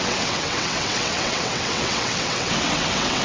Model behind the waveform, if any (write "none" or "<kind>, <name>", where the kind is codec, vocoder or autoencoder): vocoder, WaveNeXt